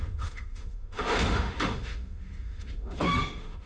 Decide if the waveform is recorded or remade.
remade